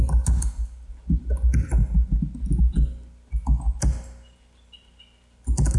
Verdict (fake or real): real